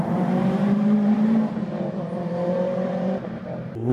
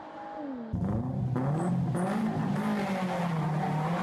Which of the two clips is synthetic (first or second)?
first